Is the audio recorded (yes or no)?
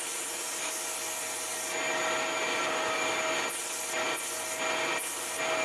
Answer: yes